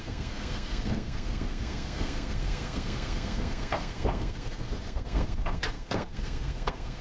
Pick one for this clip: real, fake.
fake